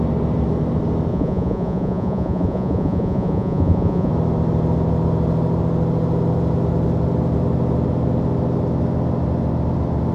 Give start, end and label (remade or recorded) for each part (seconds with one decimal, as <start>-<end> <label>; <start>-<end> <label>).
0.0-1.1 recorded; 1.1-4.1 remade; 4.1-10.1 recorded